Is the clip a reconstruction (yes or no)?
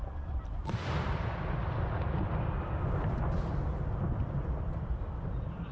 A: yes